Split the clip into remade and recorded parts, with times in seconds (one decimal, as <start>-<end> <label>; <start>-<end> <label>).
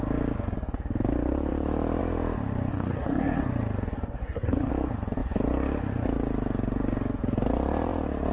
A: 0.0-2.7 recorded; 2.7-3.4 remade; 3.4-4.2 recorded; 4.2-4.7 remade; 4.7-8.3 recorded